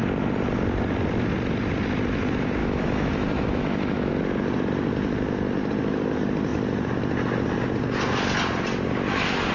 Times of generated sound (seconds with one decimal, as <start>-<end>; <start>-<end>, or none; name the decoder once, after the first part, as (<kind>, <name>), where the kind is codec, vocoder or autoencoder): 2.6-4.1 (autoencoder, DAC-VAE)